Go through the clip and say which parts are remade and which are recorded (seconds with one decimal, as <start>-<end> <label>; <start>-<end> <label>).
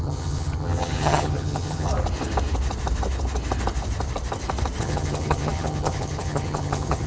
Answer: 0.0-1.9 remade; 1.9-4.8 recorded; 4.8-7.1 remade